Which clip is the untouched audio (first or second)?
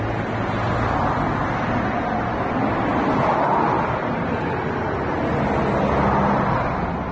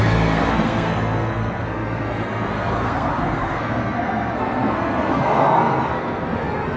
first